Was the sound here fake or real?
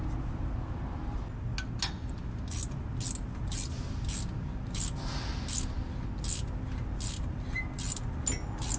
real